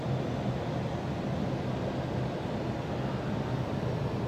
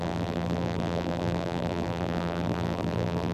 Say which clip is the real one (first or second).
first